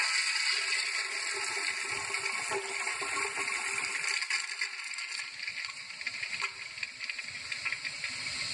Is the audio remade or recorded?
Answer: recorded